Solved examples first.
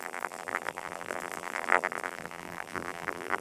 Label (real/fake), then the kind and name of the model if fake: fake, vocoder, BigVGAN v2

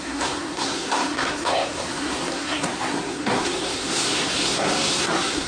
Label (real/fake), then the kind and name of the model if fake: fake, codec, SNAC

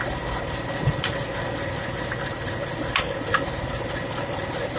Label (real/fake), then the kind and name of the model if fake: real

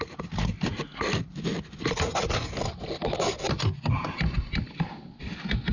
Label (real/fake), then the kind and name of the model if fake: real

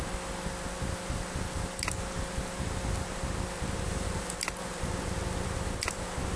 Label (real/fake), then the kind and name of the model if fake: real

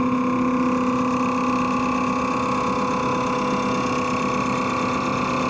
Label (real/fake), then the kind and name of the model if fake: real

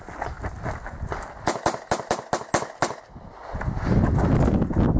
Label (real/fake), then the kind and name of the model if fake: real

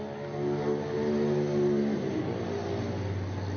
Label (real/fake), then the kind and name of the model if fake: real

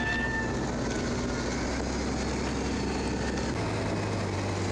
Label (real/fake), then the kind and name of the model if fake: real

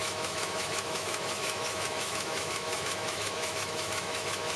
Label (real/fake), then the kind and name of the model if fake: fake, autoencoder, DAC-VAE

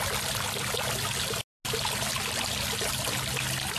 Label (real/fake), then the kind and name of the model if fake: real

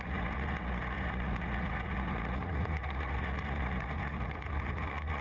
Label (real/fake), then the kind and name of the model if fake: fake, vocoder, Vocos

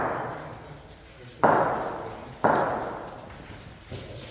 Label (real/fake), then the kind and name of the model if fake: real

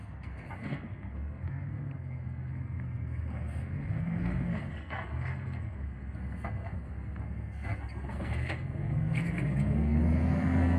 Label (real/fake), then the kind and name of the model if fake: fake, codec, SNAC